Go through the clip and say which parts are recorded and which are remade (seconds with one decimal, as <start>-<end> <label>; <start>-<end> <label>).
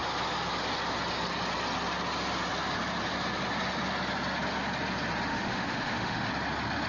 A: 0.0-5.3 recorded; 5.3-6.3 remade; 6.3-6.9 recorded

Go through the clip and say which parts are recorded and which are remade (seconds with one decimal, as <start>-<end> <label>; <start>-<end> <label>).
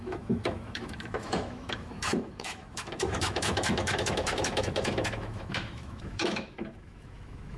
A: 0.0-7.6 remade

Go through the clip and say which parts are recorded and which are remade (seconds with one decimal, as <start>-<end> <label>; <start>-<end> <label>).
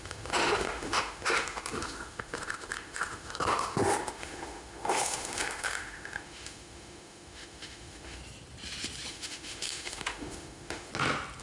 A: 0.0-8.2 remade; 8.2-9.1 recorded; 9.1-10.9 remade; 10.9-11.4 recorded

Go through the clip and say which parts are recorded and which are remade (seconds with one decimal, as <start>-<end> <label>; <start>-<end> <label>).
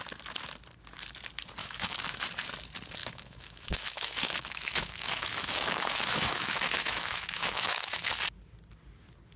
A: 0.0-1.6 recorded; 1.6-2.2 remade; 2.2-3.0 recorded; 3.0-8.2 remade; 8.2-9.4 recorded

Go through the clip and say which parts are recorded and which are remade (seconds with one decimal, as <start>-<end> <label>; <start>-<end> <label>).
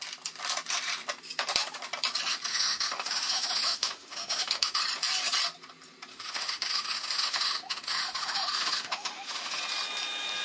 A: 0.0-2.5 recorded; 2.5-4.8 remade; 4.8-6.1 recorded; 6.1-9.6 remade; 9.6-10.4 recorded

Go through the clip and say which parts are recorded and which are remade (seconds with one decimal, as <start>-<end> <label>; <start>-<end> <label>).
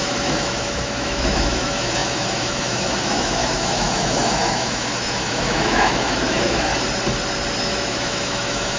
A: 0.0-6.7 remade; 6.7-7.6 recorded; 7.6-8.8 remade